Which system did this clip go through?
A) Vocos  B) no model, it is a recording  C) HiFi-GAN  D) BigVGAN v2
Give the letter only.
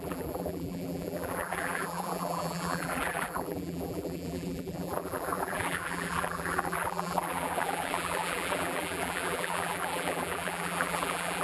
D